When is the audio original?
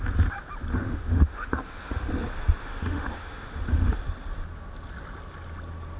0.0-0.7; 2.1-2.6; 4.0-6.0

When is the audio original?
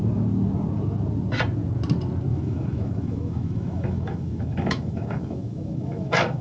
0.0-2.3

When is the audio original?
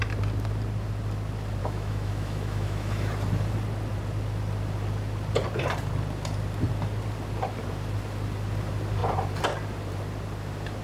0.0-1.6; 3.1-10.8